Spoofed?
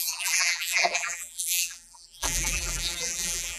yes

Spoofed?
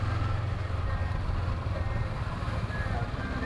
no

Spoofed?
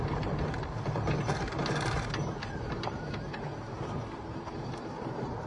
yes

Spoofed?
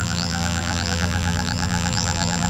yes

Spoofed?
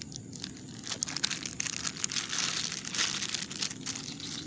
no